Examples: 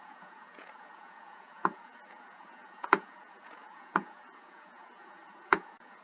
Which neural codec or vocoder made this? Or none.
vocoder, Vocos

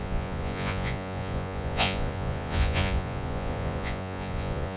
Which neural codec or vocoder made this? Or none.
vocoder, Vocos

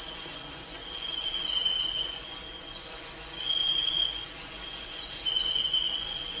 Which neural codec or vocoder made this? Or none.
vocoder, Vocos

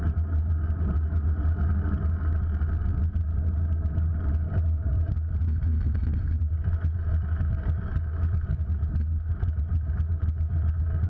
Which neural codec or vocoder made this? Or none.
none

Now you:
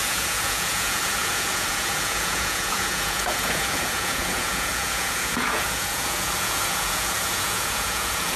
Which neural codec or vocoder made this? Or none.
vocoder, Vocos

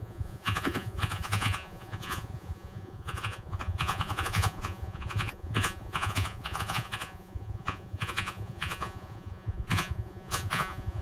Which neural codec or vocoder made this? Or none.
vocoder, Vocos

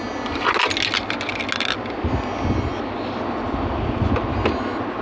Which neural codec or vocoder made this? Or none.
none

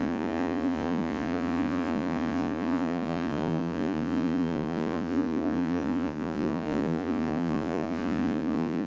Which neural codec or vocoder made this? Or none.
vocoder, Vocos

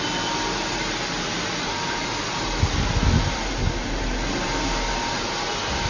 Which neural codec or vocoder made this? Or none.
none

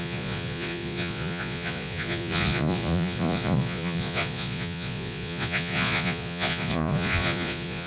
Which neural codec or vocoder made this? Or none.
vocoder, Vocos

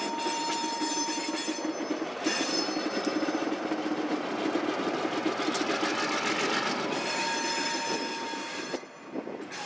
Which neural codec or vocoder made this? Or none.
none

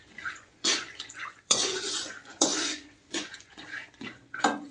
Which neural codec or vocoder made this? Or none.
vocoder, Vocos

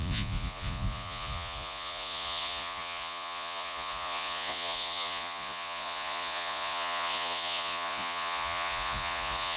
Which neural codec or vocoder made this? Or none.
vocoder, Vocos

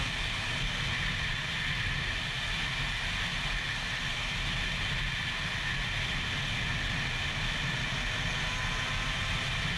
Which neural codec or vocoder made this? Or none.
none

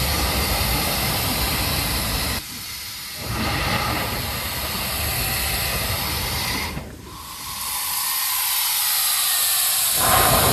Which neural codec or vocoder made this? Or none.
none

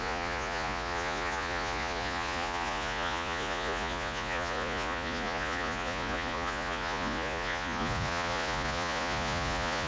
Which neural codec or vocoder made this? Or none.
vocoder, Vocos